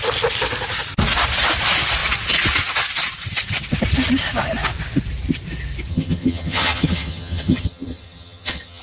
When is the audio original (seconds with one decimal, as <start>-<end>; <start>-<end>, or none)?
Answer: 0.0-5.9